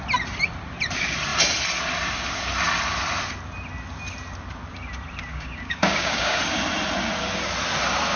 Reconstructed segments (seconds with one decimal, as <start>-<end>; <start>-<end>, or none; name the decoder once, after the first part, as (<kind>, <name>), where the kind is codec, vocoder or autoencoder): 5.3-6.4 (codec, DAC)